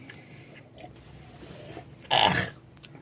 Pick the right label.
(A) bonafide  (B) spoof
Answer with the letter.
A